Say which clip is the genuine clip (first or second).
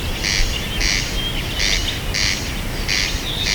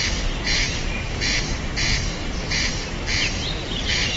first